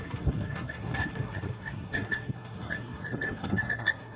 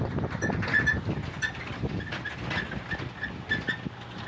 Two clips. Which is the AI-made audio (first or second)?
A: first